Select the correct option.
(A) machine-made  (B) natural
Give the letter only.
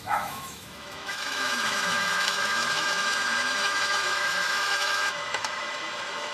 A